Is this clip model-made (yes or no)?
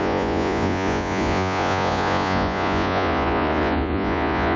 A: yes